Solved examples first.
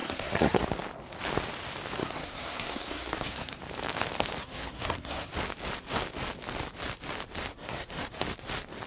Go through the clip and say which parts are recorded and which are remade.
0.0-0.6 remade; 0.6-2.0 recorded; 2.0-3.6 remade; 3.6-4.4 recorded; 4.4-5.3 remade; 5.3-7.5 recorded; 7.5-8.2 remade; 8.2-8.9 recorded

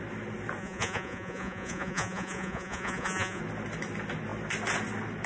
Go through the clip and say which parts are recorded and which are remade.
0.0-0.6 recorded; 0.6-3.4 remade; 3.4-5.3 recorded

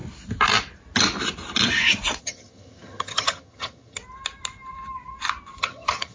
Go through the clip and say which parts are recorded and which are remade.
0.0-2.2 recorded; 2.2-4.0 remade; 4.0-5.6 recorded; 5.6-6.1 remade

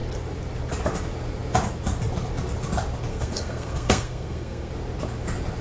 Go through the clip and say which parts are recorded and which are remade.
0.0-3.1 recorded; 3.1-4.7 remade; 4.7-5.6 recorded

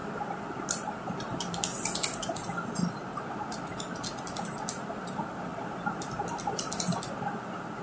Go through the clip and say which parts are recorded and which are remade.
0.0-3.1 remade; 3.1-4.4 recorded; 4.4-7.8 remade

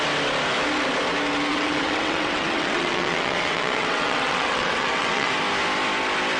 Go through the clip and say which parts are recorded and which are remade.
0.0-1.5 recorded; 1.5-5.3 remade; 5.3-6.4 recorded

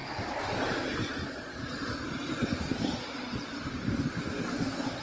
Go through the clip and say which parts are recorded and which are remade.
0.0-5.0 recorded

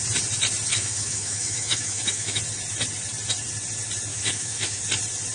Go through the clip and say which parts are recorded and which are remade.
0.0-0.7 recorded; 0.7-2.4 remade; 2.4-4.1 recorded; 4.1-4.8 remade; 4.8-5.3 recorded